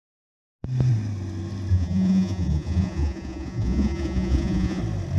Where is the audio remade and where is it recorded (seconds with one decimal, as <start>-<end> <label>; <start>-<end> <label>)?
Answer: 0.0-1.7 recorded; 1.7-4.8 remade; 4.8-5.2 recorded